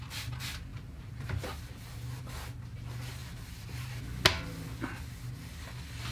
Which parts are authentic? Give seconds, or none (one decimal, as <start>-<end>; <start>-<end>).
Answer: 0.0-0.7; 1.6-3.2; 4.0-6.1